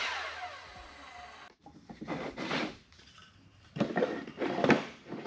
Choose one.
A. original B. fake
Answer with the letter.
A